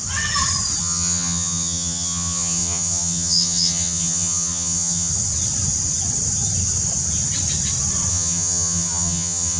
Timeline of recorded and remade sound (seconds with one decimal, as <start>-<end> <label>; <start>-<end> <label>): 0.0-0.8 recorded; 0.8-5.1 remade; 5.1-8.1 recorded; 8.1-9.6 remade